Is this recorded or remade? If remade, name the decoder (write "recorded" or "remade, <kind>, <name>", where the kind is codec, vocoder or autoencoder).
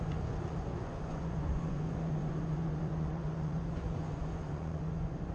remade, vocoder, Vocos